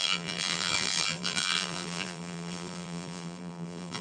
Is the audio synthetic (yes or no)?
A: yes